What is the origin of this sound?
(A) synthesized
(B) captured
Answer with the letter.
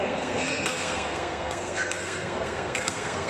A